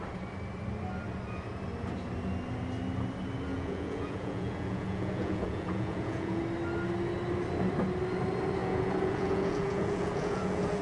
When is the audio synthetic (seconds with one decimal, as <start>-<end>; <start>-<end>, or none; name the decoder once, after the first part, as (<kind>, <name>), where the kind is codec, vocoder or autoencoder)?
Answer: 3.5-6.4 (vocoder, Vocos); 8.6-10.8